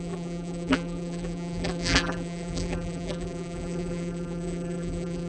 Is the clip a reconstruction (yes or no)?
yes